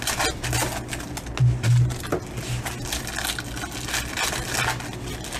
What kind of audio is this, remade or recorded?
recorded